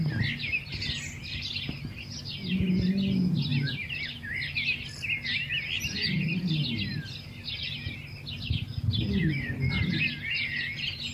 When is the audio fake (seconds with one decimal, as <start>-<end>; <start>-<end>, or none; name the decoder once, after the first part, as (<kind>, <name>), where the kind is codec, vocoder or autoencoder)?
none